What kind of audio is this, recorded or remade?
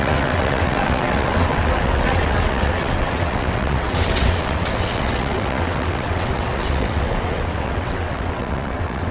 remade